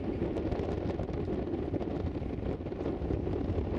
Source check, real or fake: real